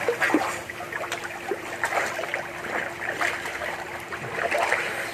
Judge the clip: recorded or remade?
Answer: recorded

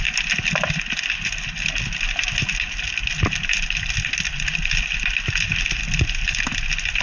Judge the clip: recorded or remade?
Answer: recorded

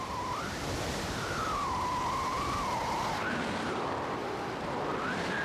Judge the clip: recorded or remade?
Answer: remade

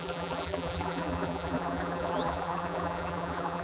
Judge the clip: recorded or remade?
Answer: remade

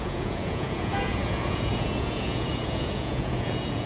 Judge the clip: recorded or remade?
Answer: remade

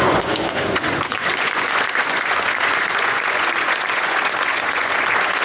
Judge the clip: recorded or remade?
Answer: remade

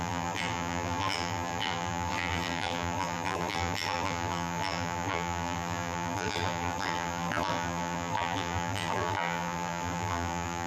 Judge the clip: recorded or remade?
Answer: remade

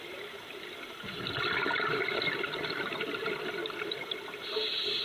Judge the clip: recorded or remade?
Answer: remade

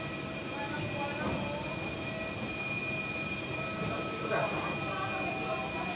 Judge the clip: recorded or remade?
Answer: recorded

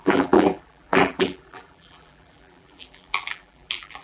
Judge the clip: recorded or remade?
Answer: remade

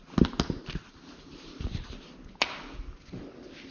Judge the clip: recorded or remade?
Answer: recorded